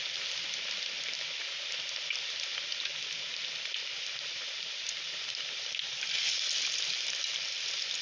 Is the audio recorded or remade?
recorded